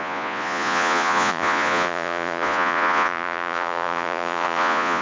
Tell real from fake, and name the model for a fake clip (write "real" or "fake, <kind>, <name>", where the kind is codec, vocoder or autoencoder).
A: fake, vocoder, Vocos